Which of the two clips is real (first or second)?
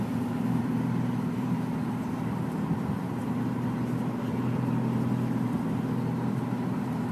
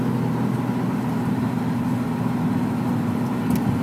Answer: second